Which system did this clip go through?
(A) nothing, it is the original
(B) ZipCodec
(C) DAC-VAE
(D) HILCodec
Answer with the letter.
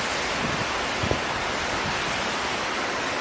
A